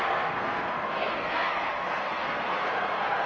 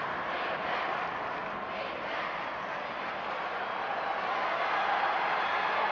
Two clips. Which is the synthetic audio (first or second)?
first